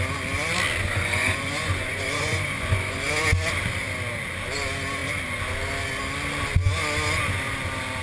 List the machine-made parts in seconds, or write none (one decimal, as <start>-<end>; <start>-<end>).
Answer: 0.8-3.1